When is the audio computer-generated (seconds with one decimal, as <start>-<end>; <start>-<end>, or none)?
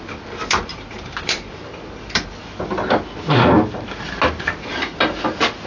0.7-2.6